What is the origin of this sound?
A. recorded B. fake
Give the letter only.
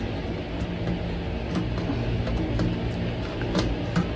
A